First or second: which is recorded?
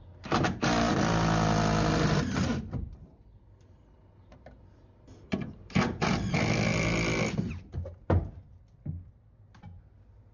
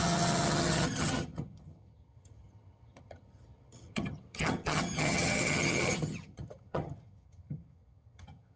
first